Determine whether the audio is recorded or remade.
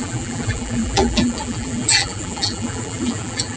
remade